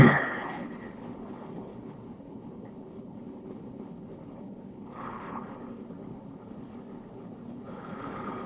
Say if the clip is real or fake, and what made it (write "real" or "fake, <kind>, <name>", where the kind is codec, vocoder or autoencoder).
fake, codec, HILCodec